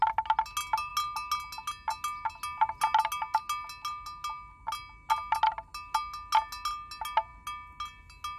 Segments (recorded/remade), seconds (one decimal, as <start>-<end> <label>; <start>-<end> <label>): 0.0-8.4 recorded